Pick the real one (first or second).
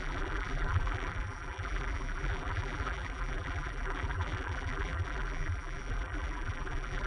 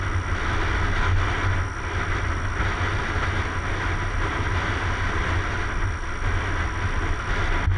second